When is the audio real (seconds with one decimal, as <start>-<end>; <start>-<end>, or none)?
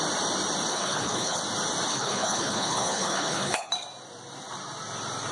0.0-0.7; 1.4-1.9; 3.7-5.3